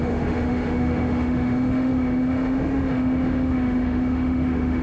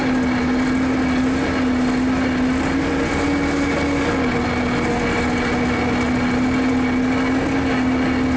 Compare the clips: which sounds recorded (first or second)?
second